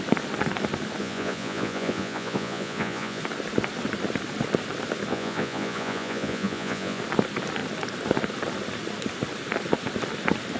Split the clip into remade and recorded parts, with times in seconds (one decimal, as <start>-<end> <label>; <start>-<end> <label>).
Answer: 0.0-1.0 recorded; 1.0-3.2 remade; 3.2-5.1 recorded; 5.1-7.0 remade; 7.0-10.6 recorded